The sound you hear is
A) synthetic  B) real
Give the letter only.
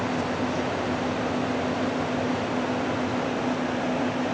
B